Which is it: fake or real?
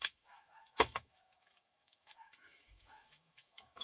fake